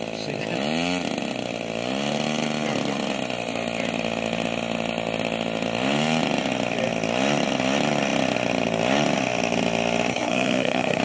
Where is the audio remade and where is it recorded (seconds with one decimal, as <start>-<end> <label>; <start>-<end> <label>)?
0.0-10.1 recorded; 10.1-11.0 remade